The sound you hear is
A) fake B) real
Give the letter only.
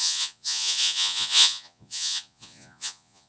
A